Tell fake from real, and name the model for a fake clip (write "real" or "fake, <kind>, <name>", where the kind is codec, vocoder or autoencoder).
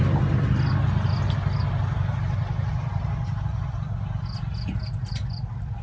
real